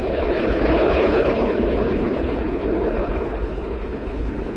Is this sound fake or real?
fake